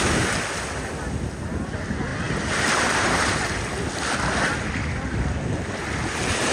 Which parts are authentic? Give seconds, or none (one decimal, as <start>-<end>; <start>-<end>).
0.0-2.1; 3.9-6.0